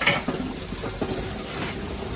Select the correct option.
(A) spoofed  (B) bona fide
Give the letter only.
B